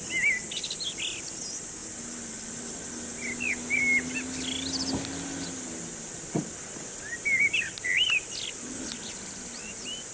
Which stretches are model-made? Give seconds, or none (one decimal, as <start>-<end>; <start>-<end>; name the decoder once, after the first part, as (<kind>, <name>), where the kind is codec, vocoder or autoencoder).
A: none